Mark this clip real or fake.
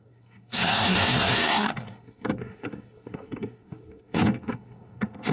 fake